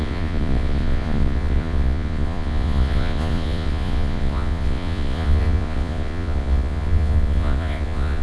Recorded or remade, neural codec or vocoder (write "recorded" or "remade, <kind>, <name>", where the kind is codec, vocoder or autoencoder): remade, vocoder, Vocos